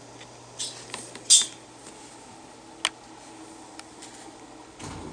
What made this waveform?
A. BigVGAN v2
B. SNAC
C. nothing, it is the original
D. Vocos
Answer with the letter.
C